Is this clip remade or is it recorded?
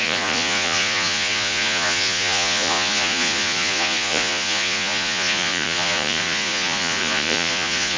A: remade